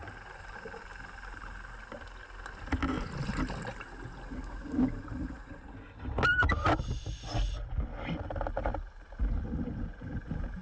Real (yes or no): yes